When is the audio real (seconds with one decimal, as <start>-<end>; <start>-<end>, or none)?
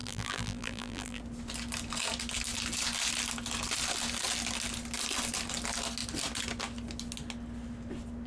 1.2-8.3